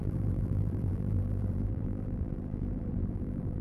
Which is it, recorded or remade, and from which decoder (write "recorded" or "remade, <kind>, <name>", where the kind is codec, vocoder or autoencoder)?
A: remade, vocoder, BigVGAN v2